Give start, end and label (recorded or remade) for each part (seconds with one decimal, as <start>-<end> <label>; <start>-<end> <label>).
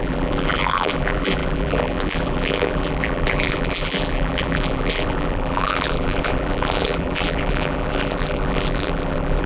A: 0.0-9.5 remade